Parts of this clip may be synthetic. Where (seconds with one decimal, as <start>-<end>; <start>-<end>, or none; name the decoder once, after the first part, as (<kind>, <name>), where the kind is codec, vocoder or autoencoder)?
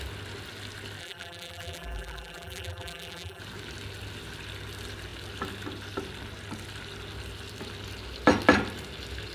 1.0-3.4 (vocoder, BigVGAN v2)